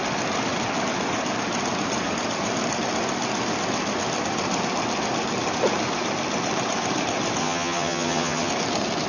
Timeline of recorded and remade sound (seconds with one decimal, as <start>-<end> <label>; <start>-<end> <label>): 0.0-7.4 recorded; 7.4-8.5 remade; 8.5-9.1 recorded